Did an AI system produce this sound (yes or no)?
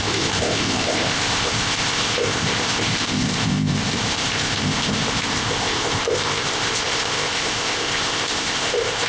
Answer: yes